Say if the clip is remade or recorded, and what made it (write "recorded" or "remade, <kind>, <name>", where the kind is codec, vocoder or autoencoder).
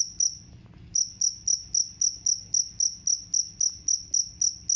recorded